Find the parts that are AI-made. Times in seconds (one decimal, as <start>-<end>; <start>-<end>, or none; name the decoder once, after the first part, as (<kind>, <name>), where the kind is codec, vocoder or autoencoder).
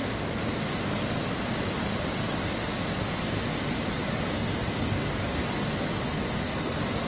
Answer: none